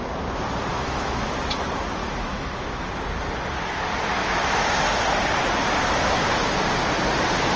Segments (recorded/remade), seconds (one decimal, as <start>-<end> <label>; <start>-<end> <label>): 0.0-0.7 recorded; 0.7-1.3 remade; 1.3-2.0 recorded; 2.0-2.9 remade; 2.9-4.2 recorded; 4.2-4.8 remade; 4.8-7.6 recorded